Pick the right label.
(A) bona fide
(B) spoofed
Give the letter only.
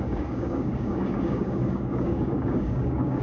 B